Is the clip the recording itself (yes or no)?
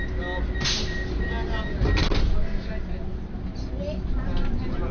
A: yes